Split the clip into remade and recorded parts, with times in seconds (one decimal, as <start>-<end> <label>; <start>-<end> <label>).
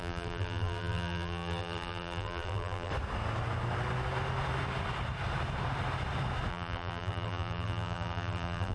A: 0.0-2.9 remade; 2.9-6.5 recorded; 6.5-8.7 remade